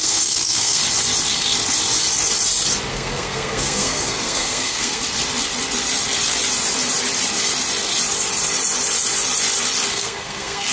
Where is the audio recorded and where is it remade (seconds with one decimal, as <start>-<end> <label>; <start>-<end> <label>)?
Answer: 0.0-0.8 remade; 0.8-2.9 recorded; 2.9-5.0 remade; 5.0-9.9 recorded; 9.9-10.7 remade